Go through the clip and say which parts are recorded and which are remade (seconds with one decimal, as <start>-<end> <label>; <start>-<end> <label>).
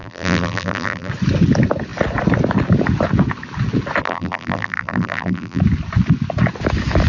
0.0-1.1 remade; 1.1-4.0 recorded; 4.0-5.6 remade; 5.6-7.1 recorded